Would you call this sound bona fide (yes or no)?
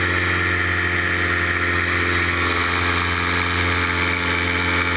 yes